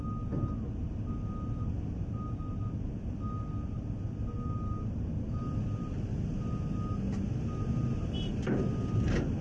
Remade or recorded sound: recorded